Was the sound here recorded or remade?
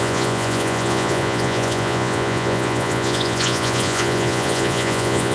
remade